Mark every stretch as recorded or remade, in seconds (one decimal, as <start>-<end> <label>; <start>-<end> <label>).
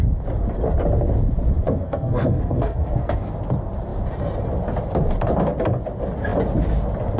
0.0-1.6 recorded; 1.6-3.3 remade; 3.3-7.2 recorded